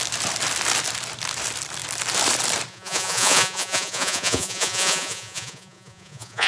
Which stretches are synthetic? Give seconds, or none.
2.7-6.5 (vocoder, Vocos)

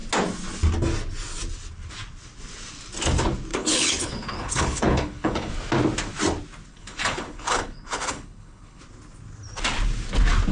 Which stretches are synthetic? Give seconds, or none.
3.5-5.5 (codec, HILCodec); 6.7-8.8

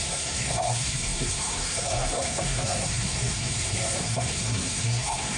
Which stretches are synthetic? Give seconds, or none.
0.0-5.4 (codec, SNAC)

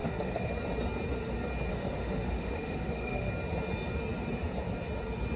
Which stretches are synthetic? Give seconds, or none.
0.0-0.5 (autoencoder, DAC-VAE); 1.7-3.3

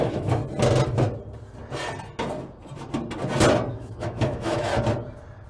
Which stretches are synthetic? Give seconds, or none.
0.0-0.4 (autoencoder, DAC-VAE); 3.7-4.7